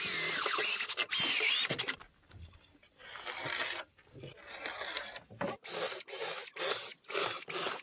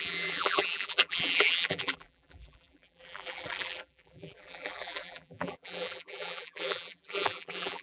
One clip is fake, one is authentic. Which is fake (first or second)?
second